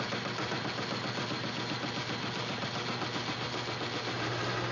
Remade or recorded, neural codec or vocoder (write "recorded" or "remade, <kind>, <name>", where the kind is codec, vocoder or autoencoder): recorded